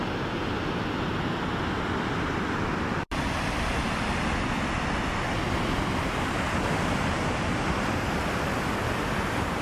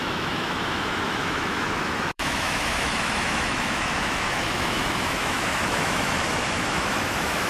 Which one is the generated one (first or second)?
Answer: second